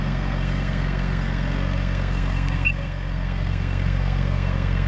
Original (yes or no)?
no